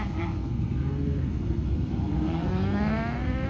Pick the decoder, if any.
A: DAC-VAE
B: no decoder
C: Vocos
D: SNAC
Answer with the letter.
D